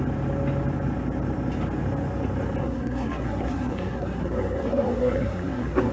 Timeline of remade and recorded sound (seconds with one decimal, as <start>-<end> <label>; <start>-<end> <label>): 0.0-2.6 recorded; 2.6-5.9 remade